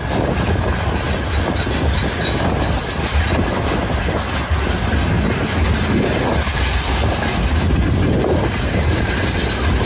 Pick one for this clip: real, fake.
real